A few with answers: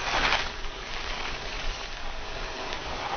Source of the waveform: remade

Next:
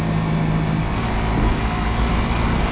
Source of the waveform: recorded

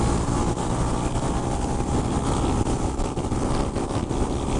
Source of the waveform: recorded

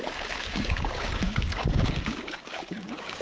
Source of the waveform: remade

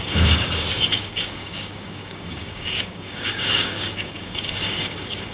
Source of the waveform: remade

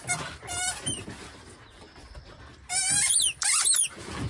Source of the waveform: recorded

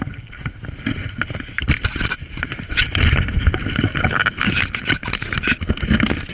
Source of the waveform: recorded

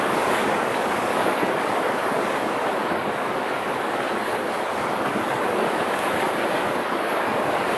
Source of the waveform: remade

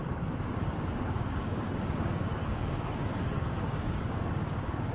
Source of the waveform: remade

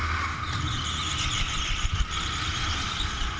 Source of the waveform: recorded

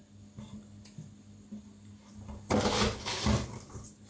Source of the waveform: recorded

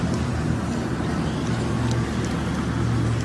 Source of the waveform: recorded